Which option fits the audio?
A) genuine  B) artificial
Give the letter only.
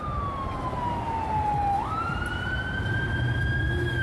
A